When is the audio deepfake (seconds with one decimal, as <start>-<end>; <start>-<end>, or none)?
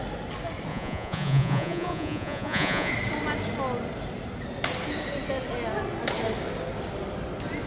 0.7-2.9